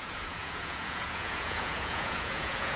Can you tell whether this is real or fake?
fake